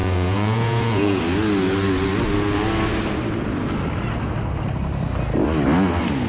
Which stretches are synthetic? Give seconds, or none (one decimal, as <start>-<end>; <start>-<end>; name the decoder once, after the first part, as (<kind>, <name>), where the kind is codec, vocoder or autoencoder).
0.0-1.2 (vocoder, Vocos)